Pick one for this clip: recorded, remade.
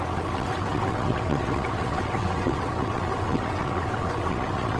remade